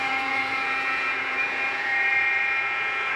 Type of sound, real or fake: fake